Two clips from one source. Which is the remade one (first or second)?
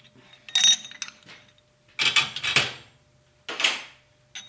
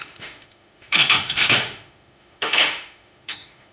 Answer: second